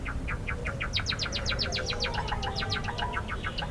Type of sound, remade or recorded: recorded